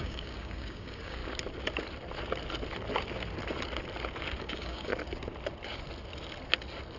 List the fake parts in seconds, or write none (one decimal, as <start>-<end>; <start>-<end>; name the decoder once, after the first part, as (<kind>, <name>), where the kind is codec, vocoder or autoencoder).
0.0-1.2 (codec, DAC); 4.4-4.9